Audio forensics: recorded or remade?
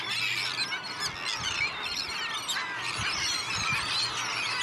recorded